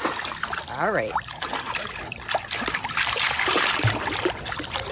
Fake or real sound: fake